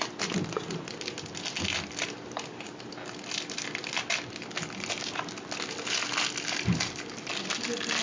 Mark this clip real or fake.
real